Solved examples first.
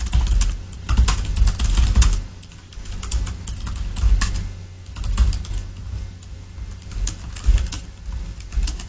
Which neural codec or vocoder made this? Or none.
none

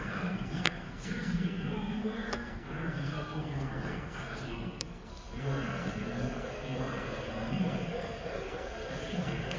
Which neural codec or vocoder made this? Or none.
codec, SNAC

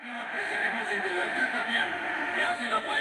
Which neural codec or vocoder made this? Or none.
autoencoder, DAC-VAE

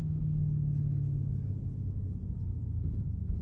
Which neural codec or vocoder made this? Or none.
none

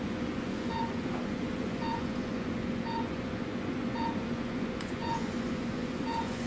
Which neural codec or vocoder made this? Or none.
vocoder, Vocos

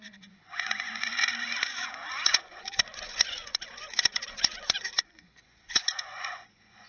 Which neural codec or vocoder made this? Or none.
vocoder, Vocos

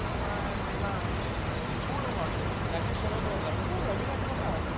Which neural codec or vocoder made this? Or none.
none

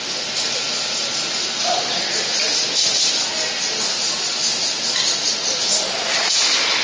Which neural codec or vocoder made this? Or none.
none